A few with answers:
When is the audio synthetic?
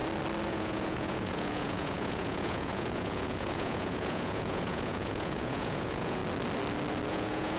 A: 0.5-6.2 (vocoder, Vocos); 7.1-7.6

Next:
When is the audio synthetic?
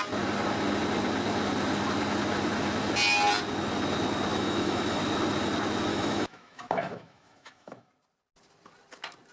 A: 4.3-5.0 (autoencoder, DAC-VAE); 5.9-7.9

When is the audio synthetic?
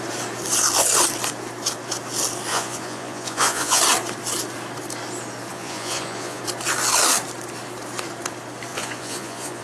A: 2.5-3.8 (vocoder, Vocos); 5.5-6.4; 8.7-9.6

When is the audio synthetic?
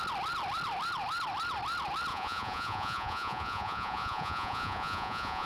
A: 2.1-5.5 (vocoder, Vocos)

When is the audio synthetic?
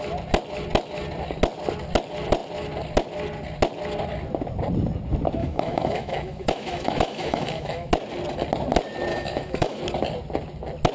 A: 5.4-7.9 (autoencoder, DAC-VAE); 9.1-9.8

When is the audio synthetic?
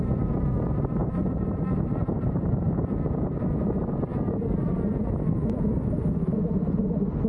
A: 1.0-3.4 (vocoder, BigVGAN v2)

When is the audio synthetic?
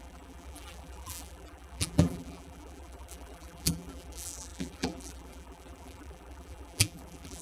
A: 0.0-7.4 (vocoder, BigVGAN v2)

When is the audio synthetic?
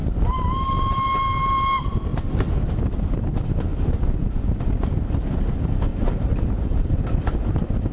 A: 3.7-4.6 (vocoder, BigVGAN v2); 5.9-7.1